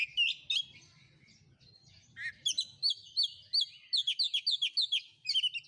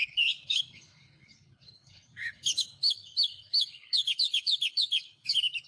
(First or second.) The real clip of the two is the first